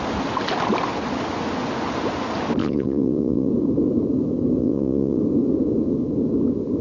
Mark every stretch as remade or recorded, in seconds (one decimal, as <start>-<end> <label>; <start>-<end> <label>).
0.0-2.6 recorded; 2.6-3.5 remade; 3.5-4.6 recorded; 4.6-5.2 remade; 5.2-6.8 recorded